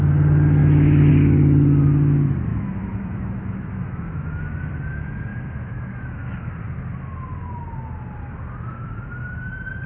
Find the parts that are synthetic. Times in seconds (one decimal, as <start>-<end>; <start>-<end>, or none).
0.6-1.1; 2.5-4.4; 5.3-6.5